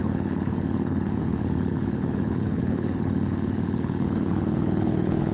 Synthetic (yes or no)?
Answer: yes